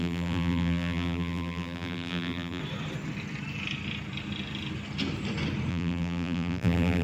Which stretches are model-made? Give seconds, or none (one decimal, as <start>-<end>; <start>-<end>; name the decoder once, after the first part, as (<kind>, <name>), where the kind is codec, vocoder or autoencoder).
0.0-2.6 (vocoder, BigVGAN v2); 5.7-7.0